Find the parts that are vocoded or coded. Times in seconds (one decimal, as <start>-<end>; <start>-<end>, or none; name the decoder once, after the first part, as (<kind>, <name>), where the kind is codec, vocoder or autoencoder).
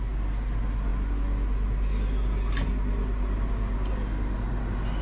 none